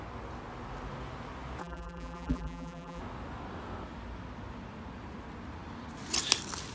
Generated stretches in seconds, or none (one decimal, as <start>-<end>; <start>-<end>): 1.6-3.0